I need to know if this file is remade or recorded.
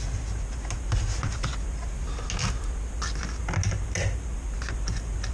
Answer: recorded